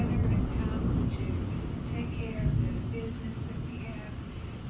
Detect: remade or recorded recorded